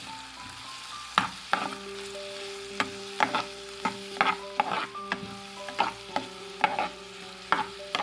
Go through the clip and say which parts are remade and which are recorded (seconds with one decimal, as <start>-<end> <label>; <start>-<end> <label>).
0.0-8.0 recorded